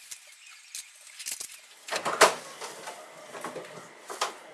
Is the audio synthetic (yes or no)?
no